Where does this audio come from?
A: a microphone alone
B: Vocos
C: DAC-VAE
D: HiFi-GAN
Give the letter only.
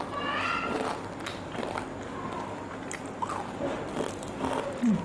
A